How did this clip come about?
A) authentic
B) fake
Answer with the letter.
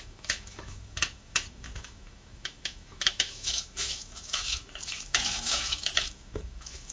B